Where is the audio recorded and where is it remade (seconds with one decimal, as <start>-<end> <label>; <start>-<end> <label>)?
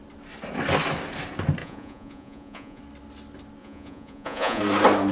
0.0-1.6 recorded; 1.6-2.8 remade; 2.8-3.6 recorded; 3.6-4.6 remade; 4.6-5.1 recorded